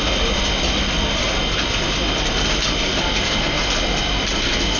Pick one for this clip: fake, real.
real